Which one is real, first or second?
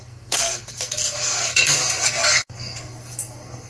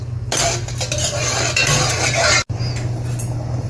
second